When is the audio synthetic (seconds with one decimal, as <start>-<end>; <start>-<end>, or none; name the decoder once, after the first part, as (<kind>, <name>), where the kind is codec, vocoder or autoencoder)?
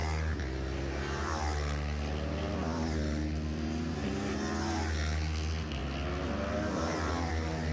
none